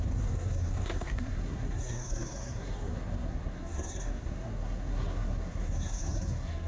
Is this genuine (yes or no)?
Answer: no